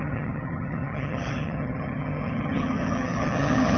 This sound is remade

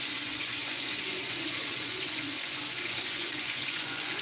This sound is remade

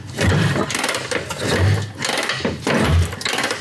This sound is recorded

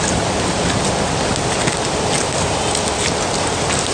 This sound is recorded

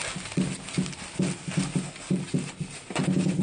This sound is recorded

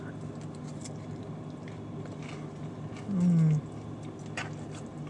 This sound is recorded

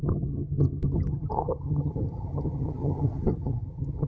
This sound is remade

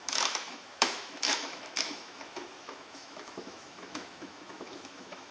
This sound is remade